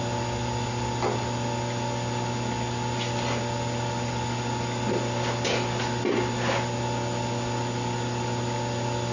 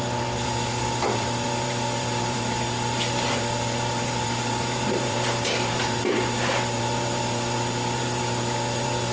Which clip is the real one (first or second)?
first